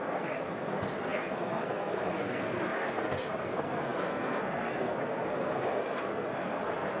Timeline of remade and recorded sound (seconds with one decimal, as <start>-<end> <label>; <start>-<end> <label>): 0.0-7.0 remade